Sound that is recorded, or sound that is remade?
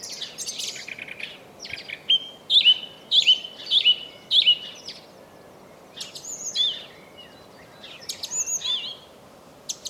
recorded